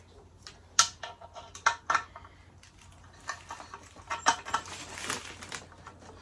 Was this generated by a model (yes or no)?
no